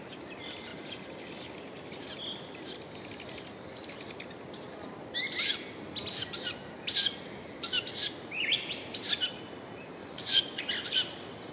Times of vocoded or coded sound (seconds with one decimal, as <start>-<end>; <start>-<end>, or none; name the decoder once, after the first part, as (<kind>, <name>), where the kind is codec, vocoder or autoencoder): 10.0-10.6 (vocoder, Vocos)

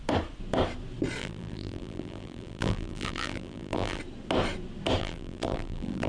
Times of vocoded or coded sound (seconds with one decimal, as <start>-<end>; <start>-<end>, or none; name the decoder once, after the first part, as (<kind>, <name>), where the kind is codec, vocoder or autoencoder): 1.2-4.0 (vocoder, BigVGAN v2); 5.0-6.1

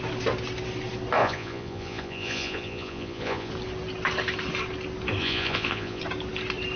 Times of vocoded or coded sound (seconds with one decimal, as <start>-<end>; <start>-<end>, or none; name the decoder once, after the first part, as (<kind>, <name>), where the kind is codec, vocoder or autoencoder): 1.2-3.5 (vocoder, Vocos); 5.2-6.0

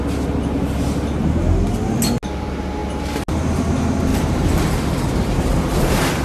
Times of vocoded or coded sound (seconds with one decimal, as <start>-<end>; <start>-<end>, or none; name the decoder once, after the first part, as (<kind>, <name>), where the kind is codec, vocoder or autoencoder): 4.1-5.1 (vocoder, BigVGAN v2)

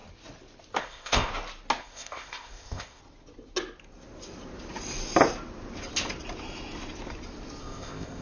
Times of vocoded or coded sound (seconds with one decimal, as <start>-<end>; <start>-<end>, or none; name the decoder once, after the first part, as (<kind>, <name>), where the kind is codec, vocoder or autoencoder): 0.8-1.3 (codec, ZipCodec); 1.8-3.0; 7.6-8.2